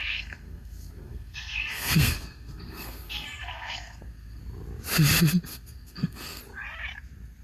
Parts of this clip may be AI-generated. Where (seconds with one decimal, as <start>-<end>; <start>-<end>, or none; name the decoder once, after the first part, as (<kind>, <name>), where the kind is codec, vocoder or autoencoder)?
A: 0.0-4.4 (codec, SNAC); 5.5-6.4